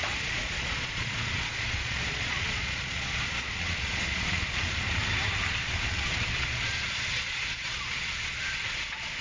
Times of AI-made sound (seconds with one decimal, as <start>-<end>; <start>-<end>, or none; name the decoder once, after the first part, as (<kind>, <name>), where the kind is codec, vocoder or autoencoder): 0.0-5.0 (vocoder, Vocos); 5.5-9.2